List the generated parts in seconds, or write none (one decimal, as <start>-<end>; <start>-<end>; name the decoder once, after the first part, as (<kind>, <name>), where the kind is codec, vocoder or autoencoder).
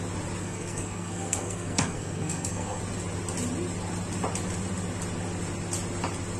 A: 0.4-2.8 (codec, SNAC)